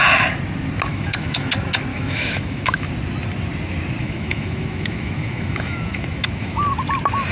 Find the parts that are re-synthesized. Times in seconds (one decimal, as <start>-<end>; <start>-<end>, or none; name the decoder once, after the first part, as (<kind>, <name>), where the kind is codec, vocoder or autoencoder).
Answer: 0.9-1.5 (autoencoder, DAC-VAE); 1.9-2.9; 4.0-6.6